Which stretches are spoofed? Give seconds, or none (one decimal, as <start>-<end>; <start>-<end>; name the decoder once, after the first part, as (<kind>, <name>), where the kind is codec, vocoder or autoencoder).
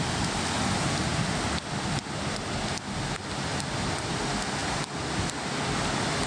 none